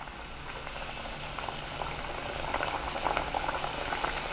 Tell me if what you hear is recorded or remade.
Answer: recorded